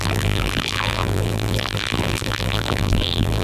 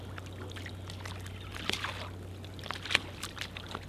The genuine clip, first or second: second